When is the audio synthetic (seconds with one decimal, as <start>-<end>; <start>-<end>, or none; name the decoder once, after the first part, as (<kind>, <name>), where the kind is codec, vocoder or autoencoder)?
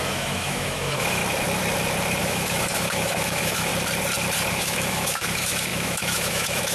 0.0-1.2 (autoencoder, DAC-VAE); 2.2-3.7; 4.5-6.7